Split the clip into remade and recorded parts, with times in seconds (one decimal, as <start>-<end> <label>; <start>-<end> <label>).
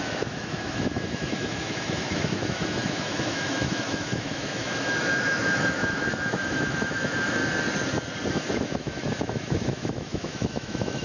0.0-7.4 remade; 7.4-8.3 recorded; 8.3-11.0 remade